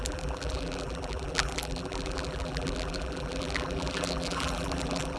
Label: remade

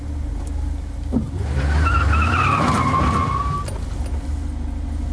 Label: recorded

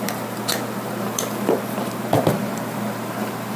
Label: remade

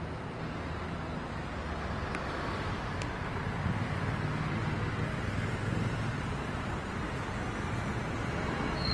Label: recorded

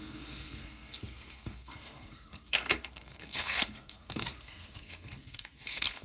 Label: remade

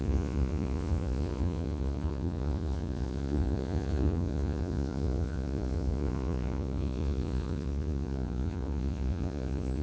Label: remade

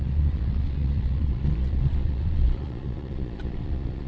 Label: remade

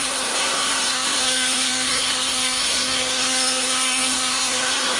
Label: remade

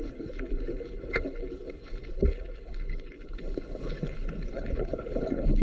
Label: remade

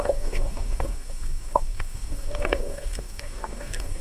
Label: remade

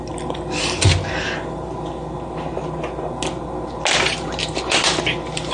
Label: recorded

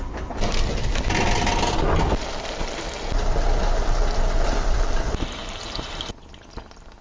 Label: recorded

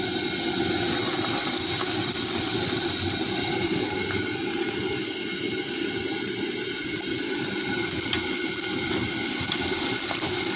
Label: recorded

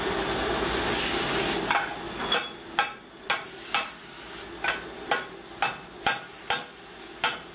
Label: recorded